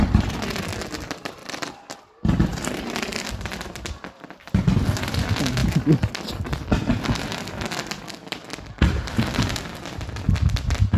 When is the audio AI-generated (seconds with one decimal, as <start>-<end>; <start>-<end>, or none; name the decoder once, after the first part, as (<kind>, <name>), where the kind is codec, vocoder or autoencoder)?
1.4-2.0 (vocoder, BigVGAN v2); 2.5-4.5; 5.6-6.7